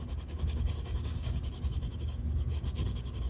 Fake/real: fake